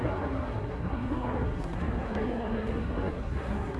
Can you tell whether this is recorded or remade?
remade